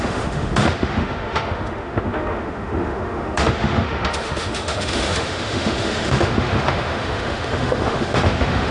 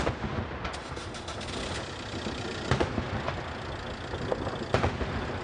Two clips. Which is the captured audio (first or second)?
second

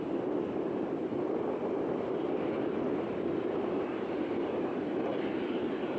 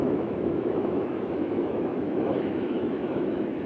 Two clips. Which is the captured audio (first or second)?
first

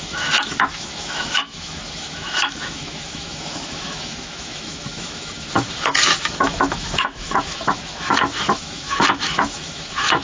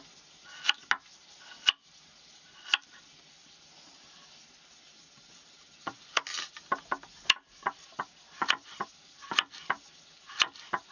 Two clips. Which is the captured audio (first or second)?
second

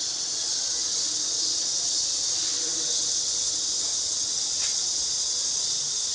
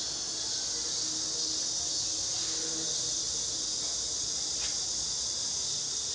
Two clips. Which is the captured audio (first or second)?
second